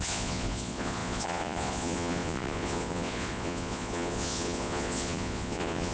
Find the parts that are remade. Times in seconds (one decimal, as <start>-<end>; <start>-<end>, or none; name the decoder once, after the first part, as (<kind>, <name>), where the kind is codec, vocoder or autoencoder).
0.0-5.9 (vocoder, Vocos)